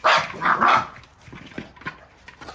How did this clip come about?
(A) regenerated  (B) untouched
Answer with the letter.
B